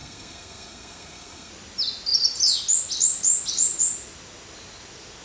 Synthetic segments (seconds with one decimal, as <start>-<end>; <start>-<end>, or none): 0.0-1.5